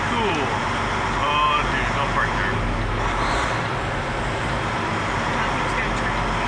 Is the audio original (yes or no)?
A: yes